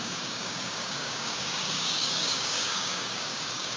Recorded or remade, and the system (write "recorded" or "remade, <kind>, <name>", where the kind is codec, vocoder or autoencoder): remade, codec, DAC